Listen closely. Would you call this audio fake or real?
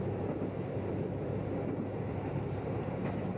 real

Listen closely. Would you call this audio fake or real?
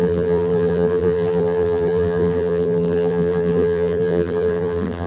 fake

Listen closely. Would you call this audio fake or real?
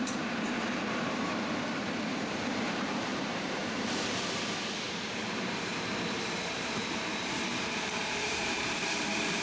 fake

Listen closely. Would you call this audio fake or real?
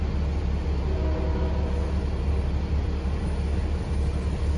real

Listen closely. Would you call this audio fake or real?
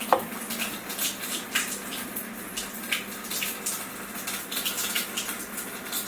real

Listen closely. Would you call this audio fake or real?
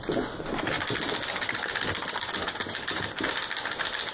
real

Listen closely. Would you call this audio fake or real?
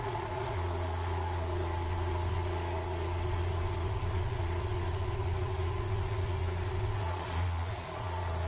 fake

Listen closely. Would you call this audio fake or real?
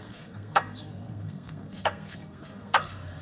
fake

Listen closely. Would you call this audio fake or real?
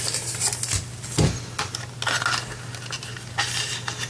real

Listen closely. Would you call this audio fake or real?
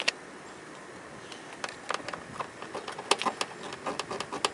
real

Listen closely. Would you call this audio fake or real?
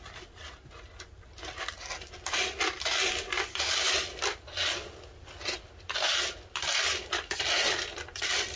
real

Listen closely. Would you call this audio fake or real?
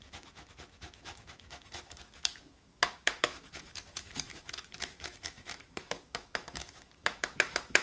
fake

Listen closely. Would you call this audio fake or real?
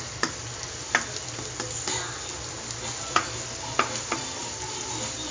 real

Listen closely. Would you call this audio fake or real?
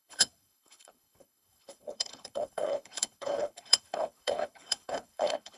fake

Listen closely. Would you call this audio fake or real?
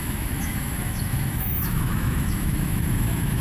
fake